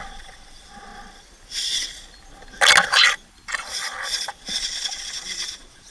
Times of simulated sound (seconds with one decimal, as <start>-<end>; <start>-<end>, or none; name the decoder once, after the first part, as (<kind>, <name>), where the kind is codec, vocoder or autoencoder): 0.0-0.9 (vocoder, Vocos); 4.4-5.9